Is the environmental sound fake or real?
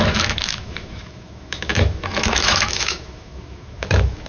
fake